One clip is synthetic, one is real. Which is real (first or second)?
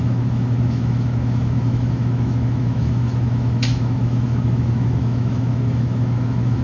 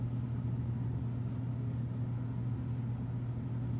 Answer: second